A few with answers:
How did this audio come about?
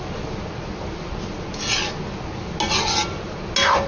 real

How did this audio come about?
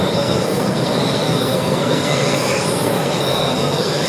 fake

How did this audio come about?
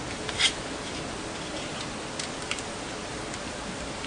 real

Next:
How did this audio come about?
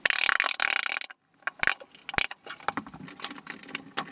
real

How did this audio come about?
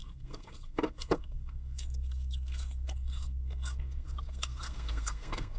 fake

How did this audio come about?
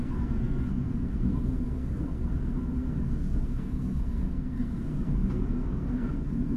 fake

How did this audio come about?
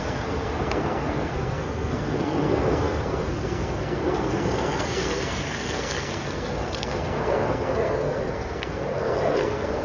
fake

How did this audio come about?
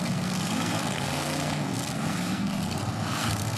fake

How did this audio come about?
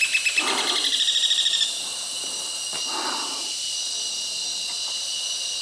real